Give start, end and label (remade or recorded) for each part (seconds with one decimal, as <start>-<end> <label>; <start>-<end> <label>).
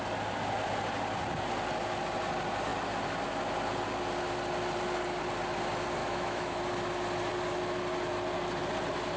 0.0-6.0 recorded; 6.0-6.6 remade; 6.6-9.2 recorded